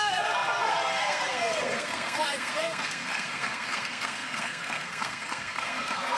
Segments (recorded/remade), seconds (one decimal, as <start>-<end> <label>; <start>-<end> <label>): 0.0-6.2 remade